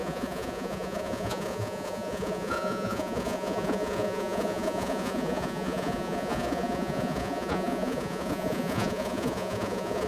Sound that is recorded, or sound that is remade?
remade